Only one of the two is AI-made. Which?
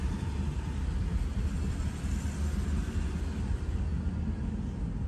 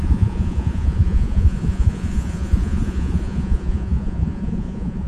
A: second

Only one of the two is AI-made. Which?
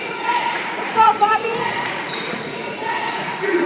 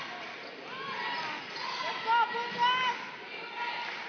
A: first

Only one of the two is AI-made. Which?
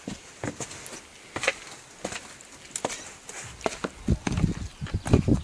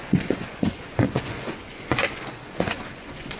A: second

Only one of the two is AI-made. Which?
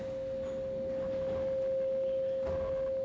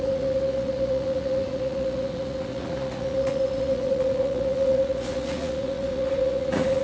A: second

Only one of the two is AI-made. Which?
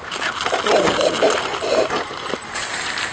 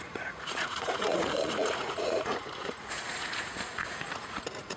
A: second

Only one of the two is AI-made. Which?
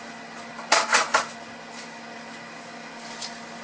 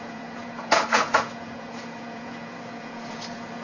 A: second